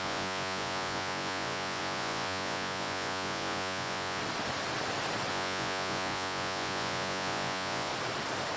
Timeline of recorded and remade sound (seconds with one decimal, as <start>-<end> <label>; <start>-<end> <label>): 0.0-4.2 remade; 4.2-5.3 recorded; 5.3-7.9 remade; 7.9-8.6 recorded